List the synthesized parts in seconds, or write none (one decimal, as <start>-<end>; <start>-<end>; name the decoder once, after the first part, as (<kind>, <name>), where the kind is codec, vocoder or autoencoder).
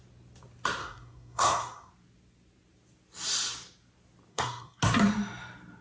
0.8-1.9 (codec, SNAC); 4.3-4.8